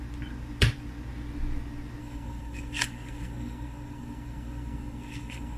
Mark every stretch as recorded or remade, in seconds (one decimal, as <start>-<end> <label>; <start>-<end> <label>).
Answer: 0.0-2.0 recorded; 2.0-5.6 remade